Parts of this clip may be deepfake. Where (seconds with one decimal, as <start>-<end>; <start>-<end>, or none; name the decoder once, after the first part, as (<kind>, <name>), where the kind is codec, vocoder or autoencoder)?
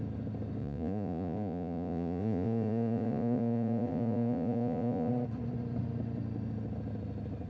0.6-5.1 (vocoder, Vocos)